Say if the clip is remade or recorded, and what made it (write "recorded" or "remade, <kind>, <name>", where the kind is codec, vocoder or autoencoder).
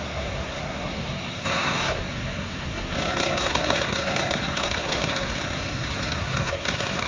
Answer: remade, codec, SNAC